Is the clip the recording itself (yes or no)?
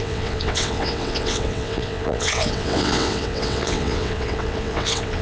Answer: no